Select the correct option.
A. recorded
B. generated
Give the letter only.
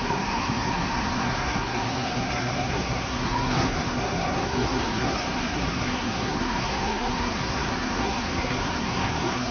B